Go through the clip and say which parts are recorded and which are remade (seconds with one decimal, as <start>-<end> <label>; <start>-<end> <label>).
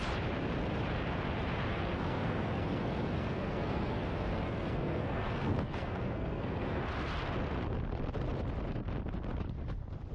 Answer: 0.0-1.7 recorded; 1.7-6.8 remade; 6.8-10.1 recorded